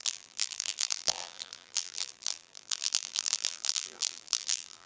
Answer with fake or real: fake